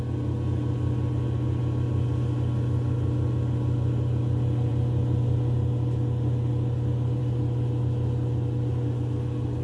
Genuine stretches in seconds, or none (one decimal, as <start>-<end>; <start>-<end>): 0.0-9.6